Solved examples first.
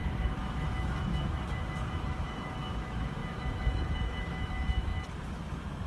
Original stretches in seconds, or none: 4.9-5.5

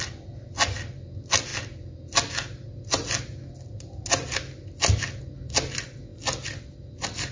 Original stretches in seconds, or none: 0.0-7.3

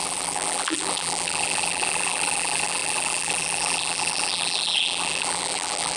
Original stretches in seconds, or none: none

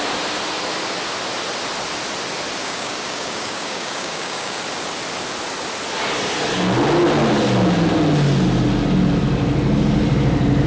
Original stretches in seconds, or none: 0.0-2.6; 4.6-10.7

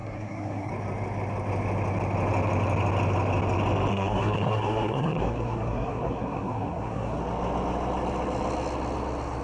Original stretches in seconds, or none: 0.7-3.9; 7.2-9.4

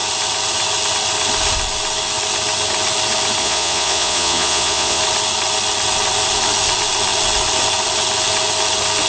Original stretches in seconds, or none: 0.0-3.4; 5.0-9.1

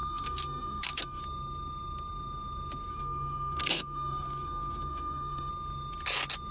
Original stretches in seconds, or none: 1.2-2.9; 5.5-6.5